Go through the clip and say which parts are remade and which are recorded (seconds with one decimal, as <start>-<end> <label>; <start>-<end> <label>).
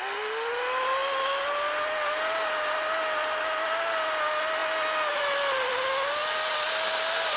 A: 0.0-7.4 recorded